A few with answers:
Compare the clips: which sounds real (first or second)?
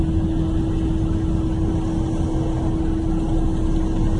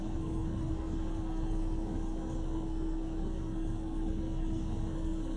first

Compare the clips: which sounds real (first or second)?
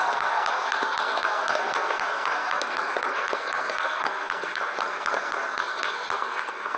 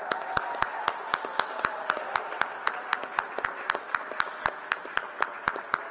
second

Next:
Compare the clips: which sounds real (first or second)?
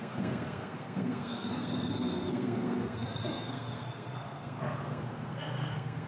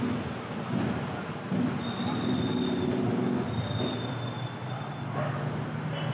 second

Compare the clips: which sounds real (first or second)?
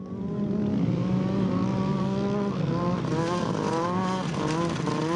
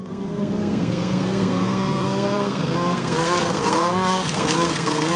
first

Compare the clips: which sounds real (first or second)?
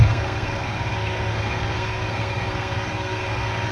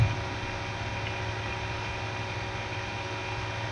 second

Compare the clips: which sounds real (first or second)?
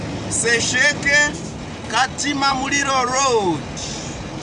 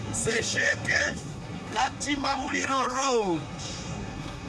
first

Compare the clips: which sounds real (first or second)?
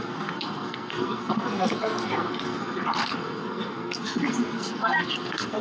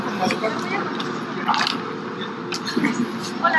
second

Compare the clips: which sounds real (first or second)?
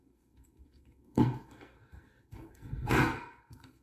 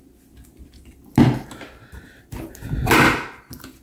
second